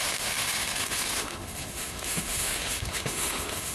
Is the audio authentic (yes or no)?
no